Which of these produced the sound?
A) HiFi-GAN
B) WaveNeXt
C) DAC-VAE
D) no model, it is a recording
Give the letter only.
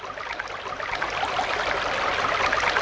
D